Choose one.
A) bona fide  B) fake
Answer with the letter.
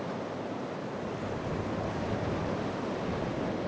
A